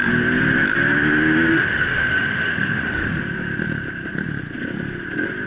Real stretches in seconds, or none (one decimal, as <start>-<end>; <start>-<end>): 0.0-1.5; 3.2-5.5